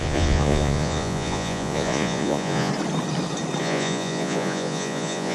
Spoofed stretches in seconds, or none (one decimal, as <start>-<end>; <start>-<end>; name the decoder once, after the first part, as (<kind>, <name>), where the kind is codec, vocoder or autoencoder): 0.0-2.7 (vocoder, Vocos); 3.6-5.3

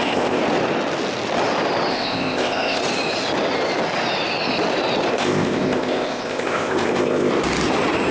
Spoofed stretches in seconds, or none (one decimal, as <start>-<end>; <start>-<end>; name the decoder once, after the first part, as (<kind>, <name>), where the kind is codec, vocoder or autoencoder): 0.0-0.4 (codec, ZipCodec); 1.9-2.8; 5.1-7.3